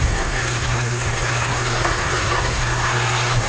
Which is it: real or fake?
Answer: fake